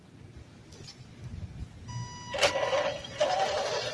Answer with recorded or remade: recorded